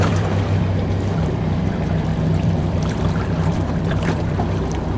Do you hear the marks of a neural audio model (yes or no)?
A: yes